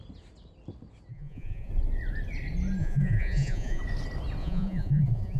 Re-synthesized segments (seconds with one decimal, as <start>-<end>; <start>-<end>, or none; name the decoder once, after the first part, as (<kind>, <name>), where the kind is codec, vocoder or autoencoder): 1.1-1.7 (vocoder, Vocos); 2.8-3.8; 4.4-5.4

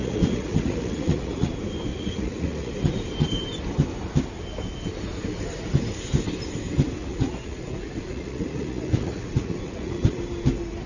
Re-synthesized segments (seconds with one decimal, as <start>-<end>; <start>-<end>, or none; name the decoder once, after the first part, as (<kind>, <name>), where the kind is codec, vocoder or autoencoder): 0.0-1.5 (vocoder, Vocos); 1.9-2.7; 7.0-10.2

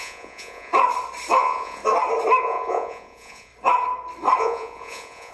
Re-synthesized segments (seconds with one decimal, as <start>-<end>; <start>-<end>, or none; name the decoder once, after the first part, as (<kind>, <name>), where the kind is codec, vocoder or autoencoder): 0.0-0.7 (vocoder, Vocos); 1.4-1.8; 2.4-3.5; 4.4-5.3

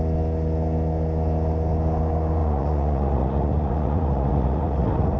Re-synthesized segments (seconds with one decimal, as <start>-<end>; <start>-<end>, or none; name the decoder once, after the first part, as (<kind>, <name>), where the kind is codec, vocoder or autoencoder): 2.4-5.2 (vocoder, Vocos)